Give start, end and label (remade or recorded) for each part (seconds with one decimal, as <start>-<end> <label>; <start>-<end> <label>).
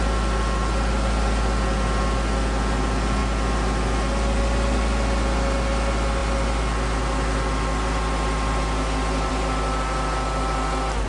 0.0-11.1 recorded